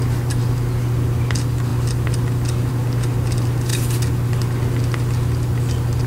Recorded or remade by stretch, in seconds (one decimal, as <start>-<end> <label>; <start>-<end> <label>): 0.0-6.1 recorded